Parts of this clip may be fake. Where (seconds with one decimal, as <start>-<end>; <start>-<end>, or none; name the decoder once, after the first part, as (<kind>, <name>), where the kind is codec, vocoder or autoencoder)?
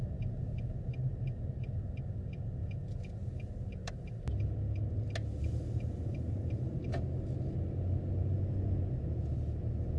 none